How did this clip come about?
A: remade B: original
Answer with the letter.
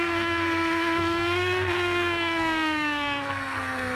A